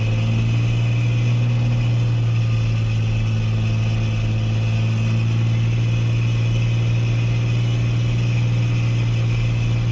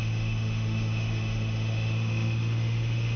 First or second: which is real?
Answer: first